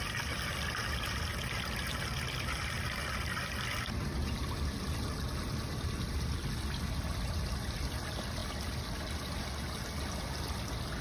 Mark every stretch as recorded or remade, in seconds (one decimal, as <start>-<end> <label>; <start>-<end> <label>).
0.0-11.0 recorded